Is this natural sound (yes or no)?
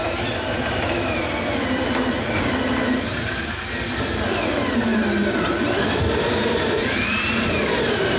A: no